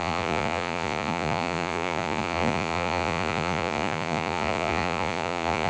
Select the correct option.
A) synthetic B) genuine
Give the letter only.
A